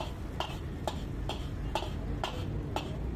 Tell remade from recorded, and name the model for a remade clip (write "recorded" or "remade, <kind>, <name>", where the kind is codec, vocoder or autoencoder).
recorded